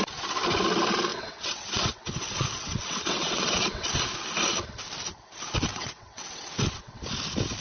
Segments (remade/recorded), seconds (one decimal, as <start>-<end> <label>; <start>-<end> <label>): 0.0-1.1 recorded; 1.1-4.0 remade; 4.0-5.7 recorded; 5.7-7.0 remade; 7.0-7.6 recorded